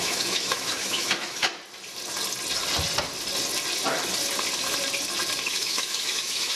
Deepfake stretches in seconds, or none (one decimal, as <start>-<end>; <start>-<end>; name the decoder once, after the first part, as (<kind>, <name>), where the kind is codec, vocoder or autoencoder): 0.0-1.5 (autoencoder, DAC-VAE); 5.5-6.6